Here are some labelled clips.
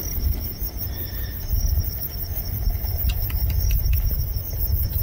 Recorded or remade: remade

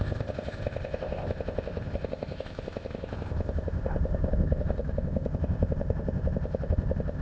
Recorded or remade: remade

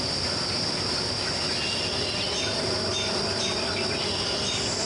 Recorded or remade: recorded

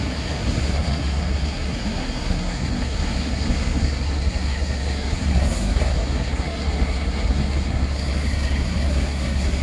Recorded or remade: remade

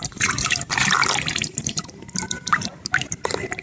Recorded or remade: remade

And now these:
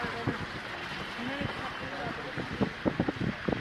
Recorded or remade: recorded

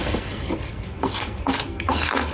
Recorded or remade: remade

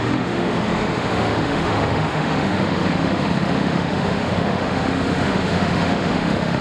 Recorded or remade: remade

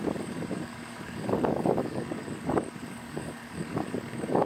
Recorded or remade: remade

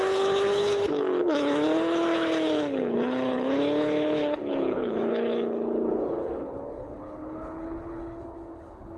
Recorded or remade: remade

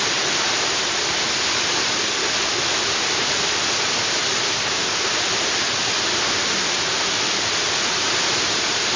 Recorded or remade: recorded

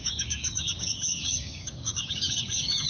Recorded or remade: remade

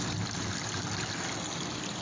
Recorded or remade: recorded